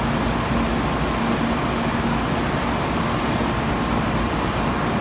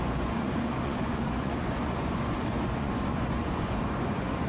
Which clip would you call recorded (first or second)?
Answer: first